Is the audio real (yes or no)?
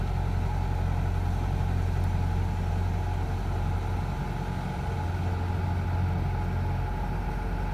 yes